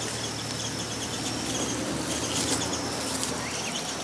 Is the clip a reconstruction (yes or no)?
no